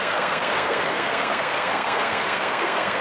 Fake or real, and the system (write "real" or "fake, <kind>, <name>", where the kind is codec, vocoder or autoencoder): fake, codec, SNAC